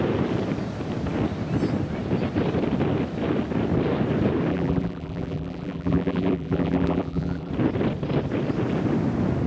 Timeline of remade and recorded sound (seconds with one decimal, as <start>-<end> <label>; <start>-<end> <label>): 0.0-4.5 recorded; 4.5-7.5 remade; 7.5-9.5 recorded